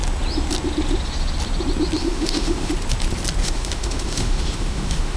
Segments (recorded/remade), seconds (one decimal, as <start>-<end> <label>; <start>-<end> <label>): 0.0-2.0 recorded; 2.0-2.7 remade; 2.7-3.4 recorded; 3.4-5.2 remade